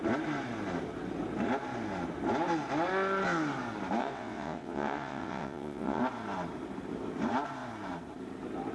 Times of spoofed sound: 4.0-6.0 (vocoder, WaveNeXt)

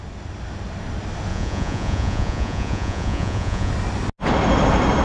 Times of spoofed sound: 1.3-3.7 (vocoder, Vocos)

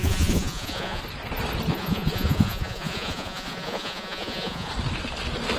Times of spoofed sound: 0.0-1.0 (vocoder, Vocos); 1.7-4.7

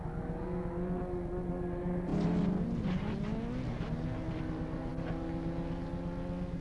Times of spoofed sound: none

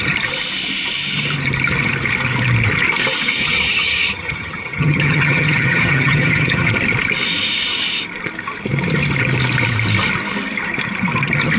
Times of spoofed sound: 3.4-6.7 (vocoder, HiFi-GAN)

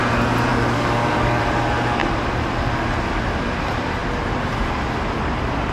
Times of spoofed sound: 0.5-1.4 (codec, DAC)